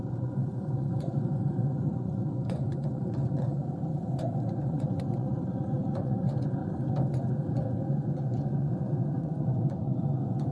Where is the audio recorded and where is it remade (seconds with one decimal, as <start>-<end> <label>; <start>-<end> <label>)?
0.0-3.6 remade; 3.6-4.3 recorded; 4.3-6.6 remade; 6.6-7.5 recorded; 7.5-10.5 remade